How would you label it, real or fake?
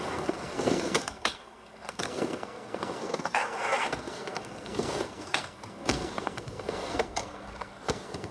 fake